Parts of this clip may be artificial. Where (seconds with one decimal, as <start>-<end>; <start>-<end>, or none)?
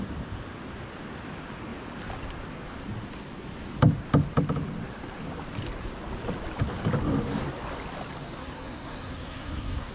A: 8.4-9.9